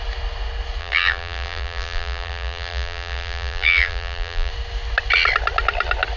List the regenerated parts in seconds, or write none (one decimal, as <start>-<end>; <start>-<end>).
0.8-4.5